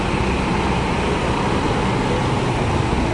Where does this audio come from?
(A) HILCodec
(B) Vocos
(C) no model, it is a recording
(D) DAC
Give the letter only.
C